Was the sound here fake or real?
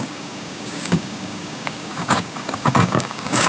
fake